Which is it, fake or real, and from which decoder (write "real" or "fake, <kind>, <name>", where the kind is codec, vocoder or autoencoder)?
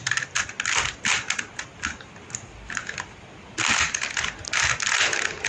real